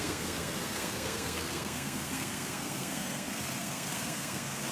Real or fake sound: fake